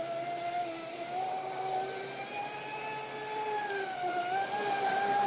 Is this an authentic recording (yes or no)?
yes